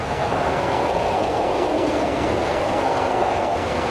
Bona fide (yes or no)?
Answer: no